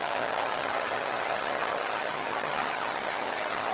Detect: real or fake fake